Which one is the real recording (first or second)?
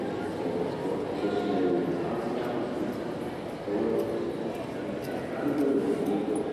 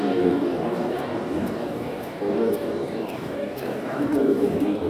first